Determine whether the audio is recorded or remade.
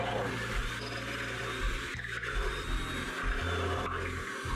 recorded